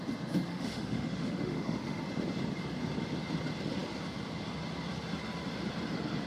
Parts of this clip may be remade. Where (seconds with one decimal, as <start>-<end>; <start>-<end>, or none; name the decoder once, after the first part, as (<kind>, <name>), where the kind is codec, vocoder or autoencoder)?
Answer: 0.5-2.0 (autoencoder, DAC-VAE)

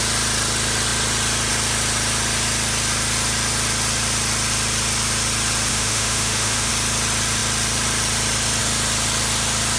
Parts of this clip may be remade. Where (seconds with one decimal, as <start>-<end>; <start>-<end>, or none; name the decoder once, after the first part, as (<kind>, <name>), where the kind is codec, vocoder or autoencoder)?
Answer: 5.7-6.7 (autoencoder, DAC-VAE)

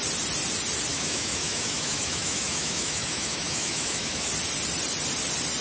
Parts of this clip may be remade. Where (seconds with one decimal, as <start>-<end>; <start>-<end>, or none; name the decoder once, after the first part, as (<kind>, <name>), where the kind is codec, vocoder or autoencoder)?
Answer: 0.9-4.3 (autoencoder, DAC-VAE)

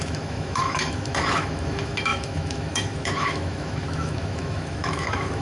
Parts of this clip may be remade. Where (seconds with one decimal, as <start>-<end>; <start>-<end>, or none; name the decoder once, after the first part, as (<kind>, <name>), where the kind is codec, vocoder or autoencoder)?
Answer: 0.0-5.4 (autoencoder, DAC-VAE)

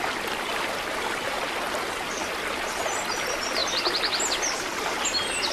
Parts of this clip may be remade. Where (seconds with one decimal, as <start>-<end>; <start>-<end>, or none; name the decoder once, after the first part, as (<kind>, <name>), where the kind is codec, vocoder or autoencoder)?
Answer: none

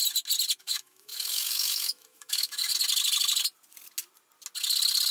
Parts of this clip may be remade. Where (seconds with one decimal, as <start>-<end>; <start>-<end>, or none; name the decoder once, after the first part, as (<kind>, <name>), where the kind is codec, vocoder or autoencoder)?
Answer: 0.6-2.7 (autoencoder, DAC-VAE)

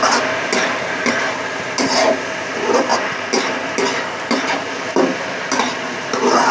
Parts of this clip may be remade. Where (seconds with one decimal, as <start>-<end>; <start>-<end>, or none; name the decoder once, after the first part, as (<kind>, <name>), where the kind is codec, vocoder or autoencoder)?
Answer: none

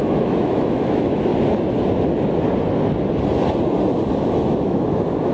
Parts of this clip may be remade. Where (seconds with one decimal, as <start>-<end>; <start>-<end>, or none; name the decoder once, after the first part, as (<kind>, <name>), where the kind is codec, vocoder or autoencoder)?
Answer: 0.0-1.3 (autoencoder, DAC-VAE); 4.5-5.3